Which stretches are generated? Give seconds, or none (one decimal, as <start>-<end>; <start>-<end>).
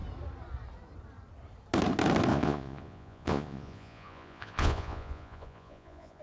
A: 2.3-6.2